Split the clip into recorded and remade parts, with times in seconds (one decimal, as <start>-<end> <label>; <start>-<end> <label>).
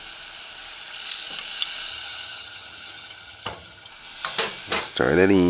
0.0-1.9 recorded; 1.9-3.9 remade; 3.9-5.5 recorded